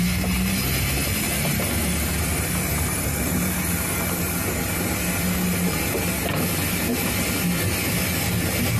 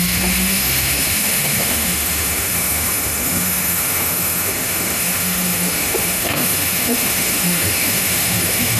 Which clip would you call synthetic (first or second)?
second